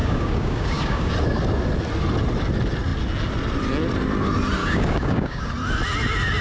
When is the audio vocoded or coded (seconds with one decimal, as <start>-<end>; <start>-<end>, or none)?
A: 0.0-1.1; 4.6-5.5